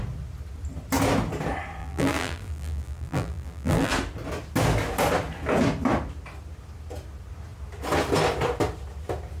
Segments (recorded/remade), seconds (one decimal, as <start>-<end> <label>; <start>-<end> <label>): 0.0-1.8 recorded; 1.8-3.9 remade; 3.9-9.4 recorded